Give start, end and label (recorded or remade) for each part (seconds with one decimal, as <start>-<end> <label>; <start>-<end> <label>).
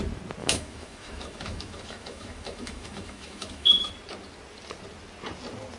0.0-0.4 recorded; 0.4-3.9 remade; 3.9-5.8 recorded